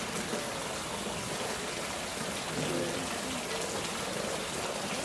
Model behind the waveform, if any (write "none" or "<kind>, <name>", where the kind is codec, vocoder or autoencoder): none